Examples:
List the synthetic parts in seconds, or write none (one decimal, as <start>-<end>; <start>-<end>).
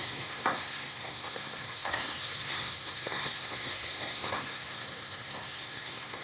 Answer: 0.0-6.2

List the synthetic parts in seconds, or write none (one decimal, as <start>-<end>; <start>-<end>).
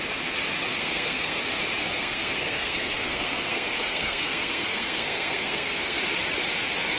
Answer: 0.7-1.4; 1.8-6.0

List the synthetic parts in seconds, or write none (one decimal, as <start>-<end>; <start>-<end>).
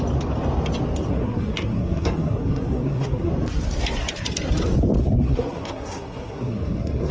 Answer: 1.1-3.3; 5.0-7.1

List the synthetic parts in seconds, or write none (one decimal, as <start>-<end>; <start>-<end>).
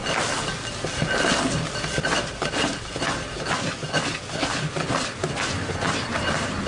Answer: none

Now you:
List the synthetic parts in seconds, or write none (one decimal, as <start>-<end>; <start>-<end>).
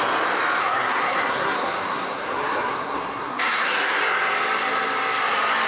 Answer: 0.6-4.0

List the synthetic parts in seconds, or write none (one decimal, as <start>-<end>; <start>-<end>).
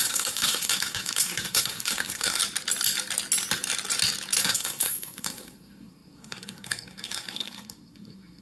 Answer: 0.0-2.4; 4.4-8.4